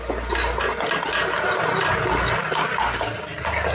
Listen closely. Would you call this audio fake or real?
real